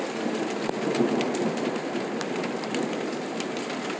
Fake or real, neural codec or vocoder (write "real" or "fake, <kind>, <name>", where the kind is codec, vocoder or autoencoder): real